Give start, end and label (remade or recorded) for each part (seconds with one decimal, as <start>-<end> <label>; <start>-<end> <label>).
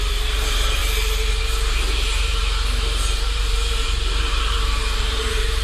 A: 0.0-0.8 remade; 0.8-1.4 recorded; 1.4-2.4 remade; 2.4-3.2 recorded; 3.2-5.6 remade